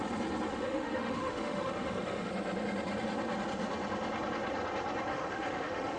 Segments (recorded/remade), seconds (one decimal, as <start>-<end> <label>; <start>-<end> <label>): 0.0-0.5 recorded; 0.5-2.3 remade; 2.3-5.1 recorded; 5.1-6.0 remade